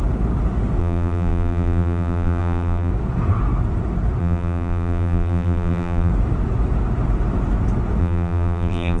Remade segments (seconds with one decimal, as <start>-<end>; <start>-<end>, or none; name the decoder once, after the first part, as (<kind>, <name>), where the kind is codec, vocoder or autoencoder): 0.8-2.9 (vocoder, BigVGAN v2); 4.2-6.1; 8.0-9.0